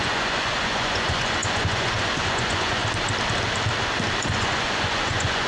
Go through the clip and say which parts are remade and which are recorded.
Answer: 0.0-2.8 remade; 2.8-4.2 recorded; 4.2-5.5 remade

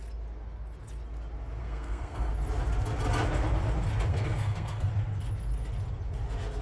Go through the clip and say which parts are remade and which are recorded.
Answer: 0.0-1.6 recorded; 1.6-2.3 remade; 2.3-4.1 recorded; 4.1-4.9 remade; 4.9-6.6 recorded

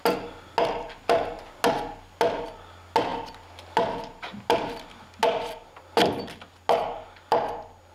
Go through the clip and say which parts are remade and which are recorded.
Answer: 0.0-7.9 recorded

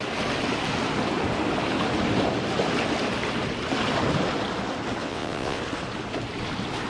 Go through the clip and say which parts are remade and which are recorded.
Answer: 0.0-5.0 recorded; 5.0-5.6 remade; 5.6-6.9 recorded

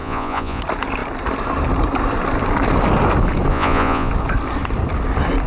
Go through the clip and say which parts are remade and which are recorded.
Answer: 0.0-0.6 remade; 0.6-3.5 recorded; 3.5-4.1 remade; 4.1-5.5 recorded

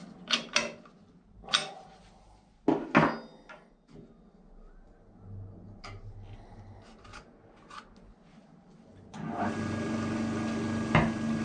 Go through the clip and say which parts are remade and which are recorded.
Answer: 0.0-1.0 recorded; 1.0-2.1 remade; 2.1-8.9 recorded; 8.9-9.5 remade; 9.5-11.4 recorded

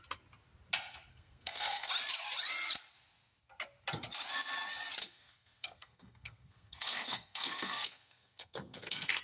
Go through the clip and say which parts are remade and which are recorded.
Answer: 0.0-1.1 recorded; 1.1-1.9 remade; 1.9-5.0 recorded; 5.0-9.2 remade